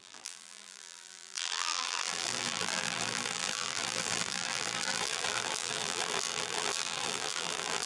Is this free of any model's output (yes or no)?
no